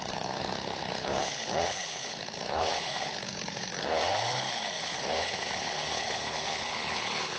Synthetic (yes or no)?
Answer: yes